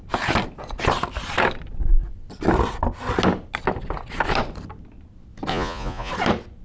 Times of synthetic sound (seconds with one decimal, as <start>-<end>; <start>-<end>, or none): 5.5-6.1